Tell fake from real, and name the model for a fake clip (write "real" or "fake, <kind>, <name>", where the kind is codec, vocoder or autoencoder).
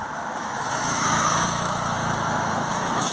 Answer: fake, autoencoder, DAC-VAE